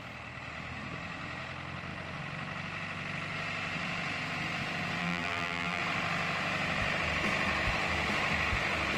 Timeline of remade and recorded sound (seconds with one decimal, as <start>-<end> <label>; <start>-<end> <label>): 0.0-5.0 recorded; 5.0-5.8 remade; 5.8-9.0 recorded